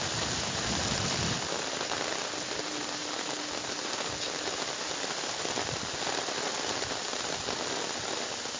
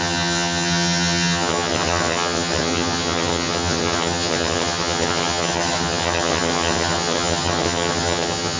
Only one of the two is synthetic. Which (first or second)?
second